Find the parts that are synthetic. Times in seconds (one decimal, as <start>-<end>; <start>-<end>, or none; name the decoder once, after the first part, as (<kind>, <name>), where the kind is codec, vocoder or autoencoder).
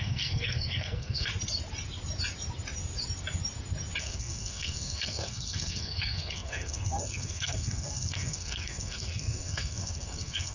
0.0-1.3 (codec, SNAC); 4.0-10.5